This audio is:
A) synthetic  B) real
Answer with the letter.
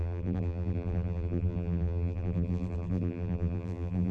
A